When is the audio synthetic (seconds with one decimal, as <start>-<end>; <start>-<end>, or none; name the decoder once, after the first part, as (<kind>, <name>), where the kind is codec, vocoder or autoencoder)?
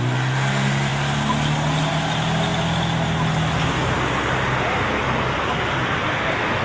0.9-1.9 (vocoder, BigVGAN v2)